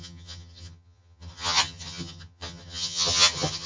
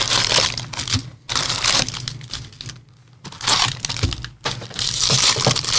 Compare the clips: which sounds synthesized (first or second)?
first